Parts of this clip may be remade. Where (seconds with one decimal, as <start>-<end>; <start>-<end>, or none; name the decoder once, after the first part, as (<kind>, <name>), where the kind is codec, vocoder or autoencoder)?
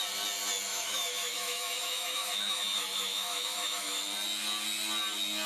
0.7-4.0 (autoencoder, DAC-VAE)